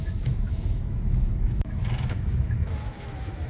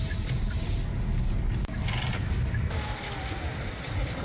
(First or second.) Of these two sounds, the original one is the second